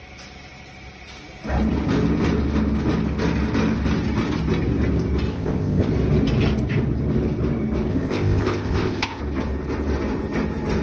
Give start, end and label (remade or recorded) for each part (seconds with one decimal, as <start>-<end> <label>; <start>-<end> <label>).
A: 0.0-5.3 recorded; 5.3-5.9 remade; 5.9-7.9 recorded; 7.9-9.2 remade; 9.2-10.8 recorded